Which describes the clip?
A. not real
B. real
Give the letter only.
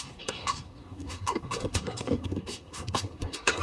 A